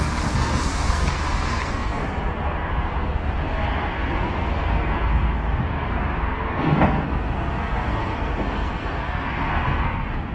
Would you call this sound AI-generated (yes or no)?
yes